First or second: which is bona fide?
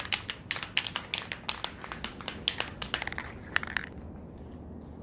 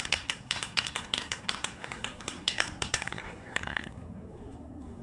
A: first